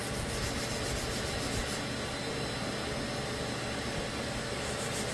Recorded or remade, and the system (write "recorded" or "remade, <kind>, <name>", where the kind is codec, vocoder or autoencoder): recorded